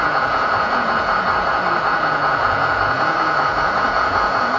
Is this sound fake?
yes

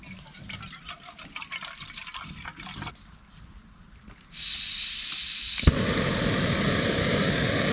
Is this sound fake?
no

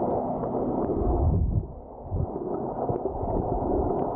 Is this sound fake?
no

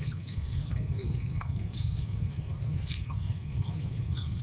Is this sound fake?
yes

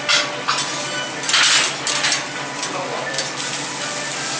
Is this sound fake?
no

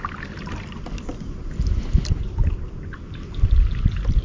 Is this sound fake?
no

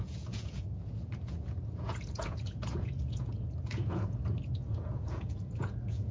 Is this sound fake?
yes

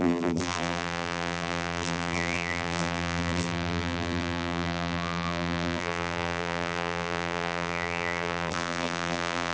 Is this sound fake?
yes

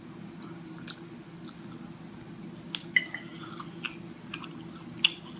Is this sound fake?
no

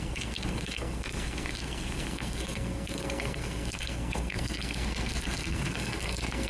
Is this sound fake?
yes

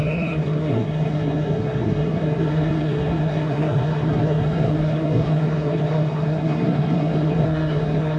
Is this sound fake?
yes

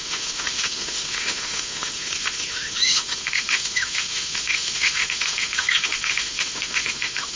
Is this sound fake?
yes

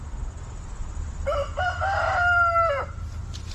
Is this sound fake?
no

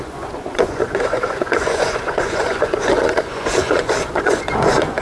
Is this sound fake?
yes